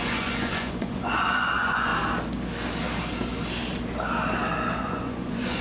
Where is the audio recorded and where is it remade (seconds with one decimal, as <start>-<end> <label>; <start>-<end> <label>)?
0.0-1.9 remade; 1.9-4.8 recorded; 4.8-5.6 remade